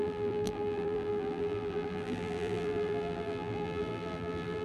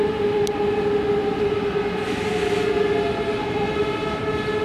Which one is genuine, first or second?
second